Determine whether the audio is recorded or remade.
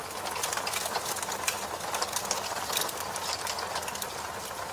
recorded